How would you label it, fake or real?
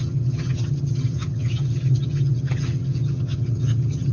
fake